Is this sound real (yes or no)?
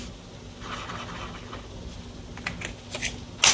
yes